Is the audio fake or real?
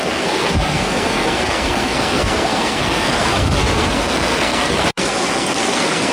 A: fake